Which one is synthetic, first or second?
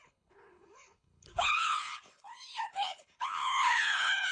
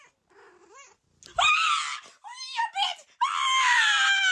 first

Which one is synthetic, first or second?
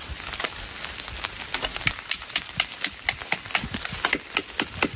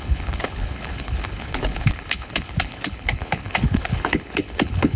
second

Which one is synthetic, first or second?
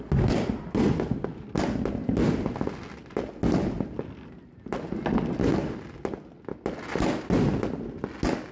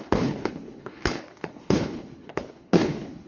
second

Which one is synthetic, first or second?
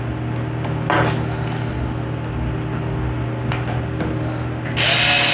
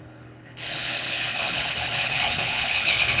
second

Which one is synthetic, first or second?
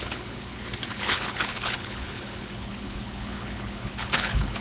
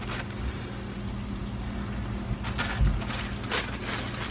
first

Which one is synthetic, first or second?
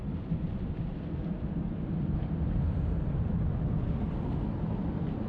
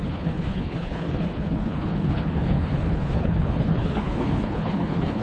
second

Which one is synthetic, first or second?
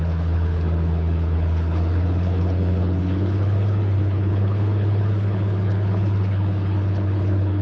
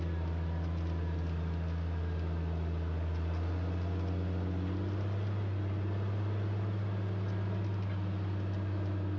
first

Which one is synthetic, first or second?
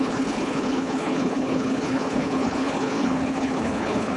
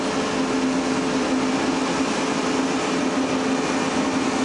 first